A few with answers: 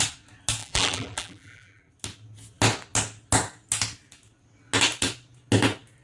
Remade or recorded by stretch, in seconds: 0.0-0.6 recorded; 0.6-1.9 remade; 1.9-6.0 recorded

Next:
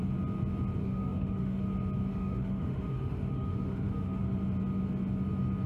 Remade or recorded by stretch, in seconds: 0.0-0.8 recorded; 0.8-1.6 remade; 1.6-2.1 recorded; 2.1-4.4 remade; 4.4-5.7 recorded

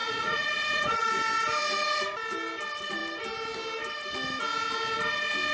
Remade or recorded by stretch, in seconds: 0.0-1.1 remade; 1.1-5.5 recorded

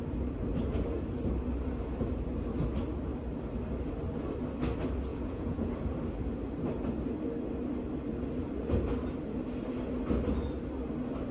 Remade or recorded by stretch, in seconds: 0.0-5.1 recorded; 5.1-5.7 remade; 5.7-11.3 recorded

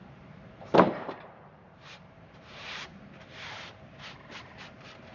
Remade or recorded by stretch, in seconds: 0.0-3.1 remade; 3.1-5.1 recorded